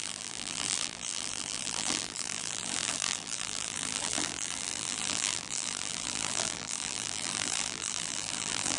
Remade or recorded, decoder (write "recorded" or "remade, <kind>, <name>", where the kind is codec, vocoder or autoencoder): remade, vocoder, BigVGAN v2